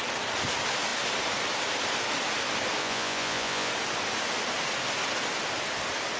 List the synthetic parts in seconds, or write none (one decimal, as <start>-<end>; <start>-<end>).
2.8-3.7